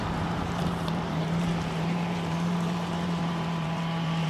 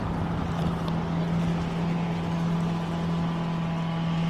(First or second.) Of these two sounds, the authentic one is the second